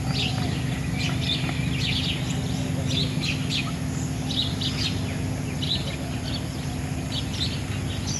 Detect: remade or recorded recorded